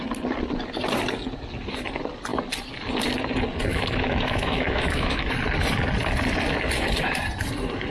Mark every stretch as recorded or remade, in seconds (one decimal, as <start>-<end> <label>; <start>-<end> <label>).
0.0-3.7 recorded; 3.7-5.3 remade; 5.3-7.9 recorded